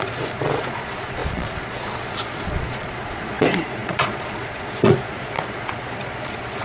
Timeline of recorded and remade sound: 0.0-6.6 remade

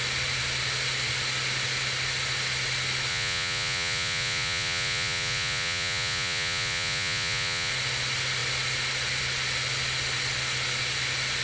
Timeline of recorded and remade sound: 0.0-3.1 recorded; 3.1-7.7 remade; 7.7-11.4 recorded

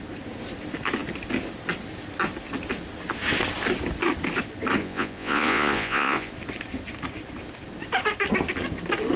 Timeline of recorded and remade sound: 0.0-4.8 recorded; 4.8-6.3 remade; 6.3-9.2 recorded

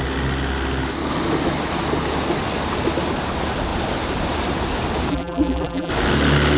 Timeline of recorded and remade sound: 0.0-5.1 recorded; 5.1-5.9 remade; 5.9-6.6 recorded